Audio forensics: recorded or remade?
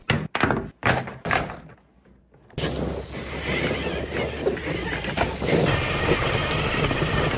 recorded